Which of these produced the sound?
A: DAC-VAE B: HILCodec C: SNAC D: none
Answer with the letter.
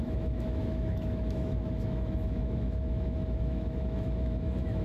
A